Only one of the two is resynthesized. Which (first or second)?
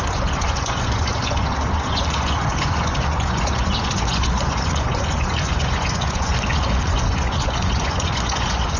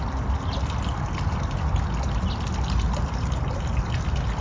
first